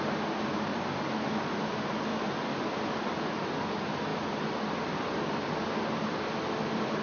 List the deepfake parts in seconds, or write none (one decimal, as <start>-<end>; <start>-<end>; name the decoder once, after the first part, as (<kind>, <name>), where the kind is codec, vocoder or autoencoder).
0.7-1.6 (vocoder, BigVGAN v2); 2.1-3.5